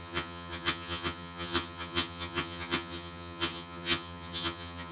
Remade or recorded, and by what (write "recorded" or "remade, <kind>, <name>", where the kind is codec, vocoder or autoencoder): remade, vocoder, HiFi-GAN